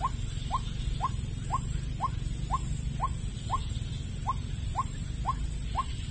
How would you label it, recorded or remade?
recorded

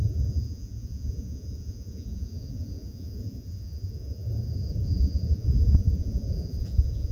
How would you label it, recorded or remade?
remade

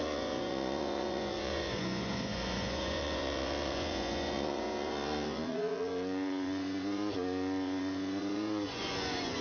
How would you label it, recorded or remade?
remade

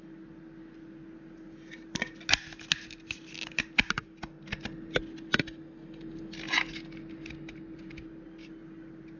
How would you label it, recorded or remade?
recorded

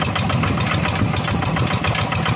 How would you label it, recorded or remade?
recorded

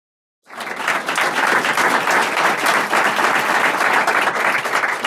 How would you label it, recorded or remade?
recorded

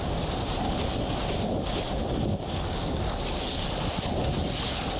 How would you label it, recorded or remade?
recorded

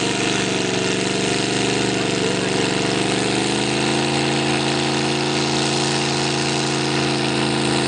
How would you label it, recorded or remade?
recorded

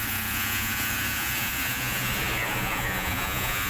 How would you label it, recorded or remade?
remade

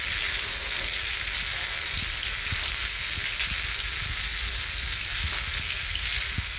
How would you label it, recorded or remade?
recorded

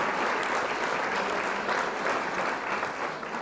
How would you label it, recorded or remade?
recorded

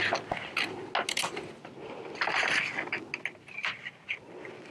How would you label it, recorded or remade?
recorded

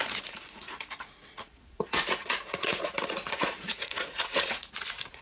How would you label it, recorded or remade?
remade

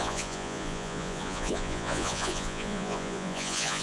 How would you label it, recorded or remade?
remade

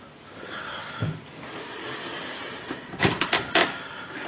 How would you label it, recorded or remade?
recorded